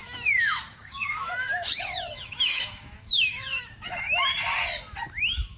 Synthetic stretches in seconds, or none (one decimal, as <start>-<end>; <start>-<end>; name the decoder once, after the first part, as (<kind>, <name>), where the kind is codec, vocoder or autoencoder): 0.0-4.3 (autoencoder, DAC-VAE); 5.1-5.6